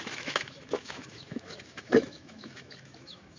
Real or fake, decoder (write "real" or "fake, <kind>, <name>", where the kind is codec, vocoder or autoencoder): fake, autoencoder, DAC-VAE